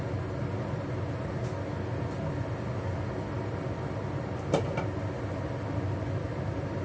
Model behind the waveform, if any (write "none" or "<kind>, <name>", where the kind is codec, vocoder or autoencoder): none